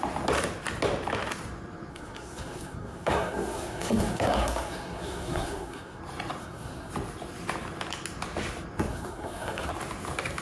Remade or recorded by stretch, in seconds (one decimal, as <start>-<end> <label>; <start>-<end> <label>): 0.0-1.9 recorded; 1.9-6.0 remade; 6.0-6.4 recorded; 6.4-6.9 remade; 6.9-8.9 recorded; 8.9-9.7 remade; 9.7-10.4 recorded